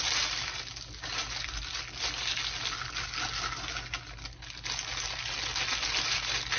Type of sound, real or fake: real